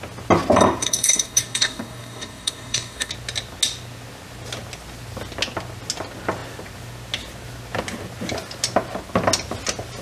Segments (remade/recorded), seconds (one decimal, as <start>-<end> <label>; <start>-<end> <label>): 0.0-0.8 recorded; 0.8-3.1 remade; 3.1-10.0 recorded